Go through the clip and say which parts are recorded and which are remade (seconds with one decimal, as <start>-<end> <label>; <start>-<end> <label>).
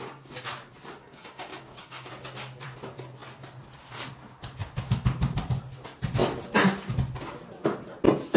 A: 0.0-1.0 recorded; 1.0-2.1 remade; 2.1-8.4 recorded